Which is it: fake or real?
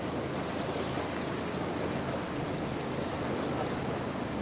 real